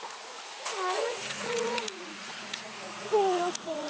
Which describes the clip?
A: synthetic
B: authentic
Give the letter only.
A